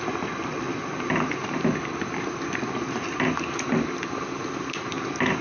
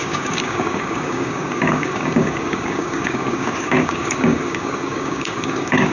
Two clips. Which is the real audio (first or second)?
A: first